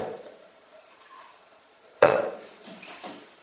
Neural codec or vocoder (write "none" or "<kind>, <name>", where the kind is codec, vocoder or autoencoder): vocoder, Vocos